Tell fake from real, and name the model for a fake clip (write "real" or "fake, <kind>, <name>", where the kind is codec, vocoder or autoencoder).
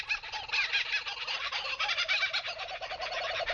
real